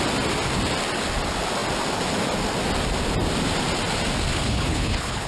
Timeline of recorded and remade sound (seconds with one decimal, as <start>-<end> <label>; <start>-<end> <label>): 0.0-4.3 recorded; 4.3-5.3 remade